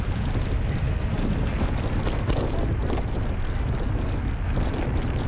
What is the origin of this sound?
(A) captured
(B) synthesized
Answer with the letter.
A